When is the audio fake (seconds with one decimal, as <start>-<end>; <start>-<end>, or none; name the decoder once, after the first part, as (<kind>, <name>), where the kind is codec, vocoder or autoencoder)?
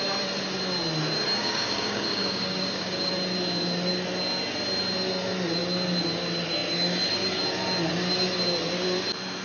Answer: 1.4-3.1 (codec, DAC)